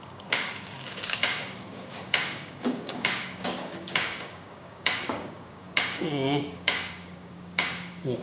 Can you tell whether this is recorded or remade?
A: remade